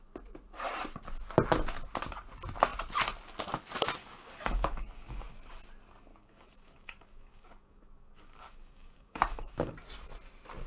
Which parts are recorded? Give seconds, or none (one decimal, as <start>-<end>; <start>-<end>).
0.0-4.0; 5.5-6.1; 9.7-10.7